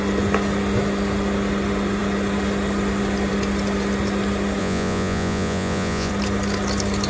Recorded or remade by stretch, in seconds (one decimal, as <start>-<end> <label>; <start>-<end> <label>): 0.0-4.6 recorded; 4.6-6.1 remade; 6.1-7.1 recorded